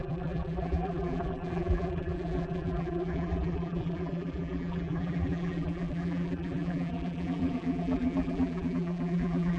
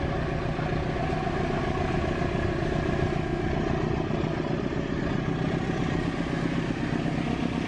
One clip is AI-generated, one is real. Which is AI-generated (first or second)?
first